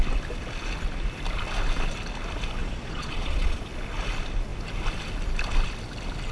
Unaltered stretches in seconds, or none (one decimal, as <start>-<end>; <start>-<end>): 0.0-2.6; 3.6-6.3